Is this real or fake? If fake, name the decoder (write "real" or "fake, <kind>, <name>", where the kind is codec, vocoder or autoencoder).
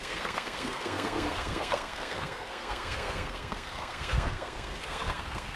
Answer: fake, codec, SNAC